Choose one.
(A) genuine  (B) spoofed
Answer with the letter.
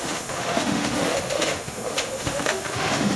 B